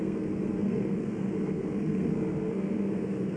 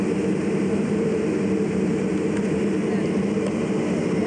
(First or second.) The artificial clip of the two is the first